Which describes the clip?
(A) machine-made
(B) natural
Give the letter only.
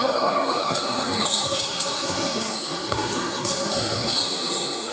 A